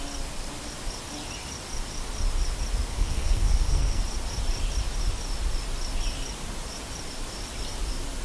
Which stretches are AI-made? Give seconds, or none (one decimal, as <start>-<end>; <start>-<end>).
2.9-4.0